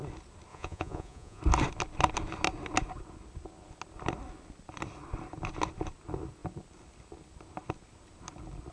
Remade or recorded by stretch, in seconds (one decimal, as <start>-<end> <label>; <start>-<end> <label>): 0.0-0.5 recorded; 0.5-1.4 remade; 1.4-8.7 recorded